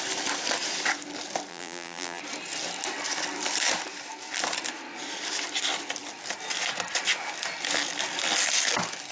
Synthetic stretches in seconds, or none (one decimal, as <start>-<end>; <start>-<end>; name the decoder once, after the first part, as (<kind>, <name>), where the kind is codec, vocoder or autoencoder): 1.5-2.2 (vocoder, BigVGAN v2)